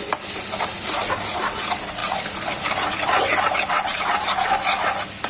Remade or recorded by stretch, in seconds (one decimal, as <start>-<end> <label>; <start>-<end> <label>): 0.0-2.0 recorded; 2.0-4.2 remade; 4.2-5.3 recorded